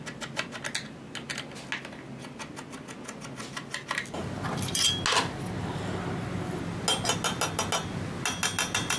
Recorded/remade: recorded